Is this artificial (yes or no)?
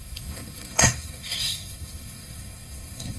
yes